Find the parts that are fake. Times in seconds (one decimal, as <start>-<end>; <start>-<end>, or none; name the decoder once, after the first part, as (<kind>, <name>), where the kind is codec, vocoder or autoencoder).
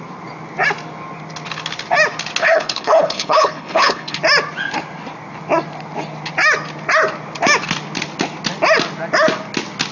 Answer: 2.4-4.2 (codec, HILCodec)